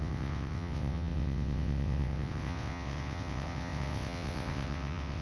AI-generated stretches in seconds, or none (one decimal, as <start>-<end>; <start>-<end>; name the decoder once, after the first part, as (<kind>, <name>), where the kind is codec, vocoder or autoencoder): 0.0-5.2 (vocoder, WaveNeXt)